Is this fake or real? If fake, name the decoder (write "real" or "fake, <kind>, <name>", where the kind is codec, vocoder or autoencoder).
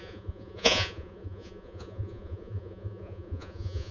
fake, vocoder, Vocos